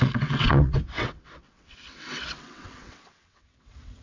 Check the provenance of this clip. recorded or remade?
remade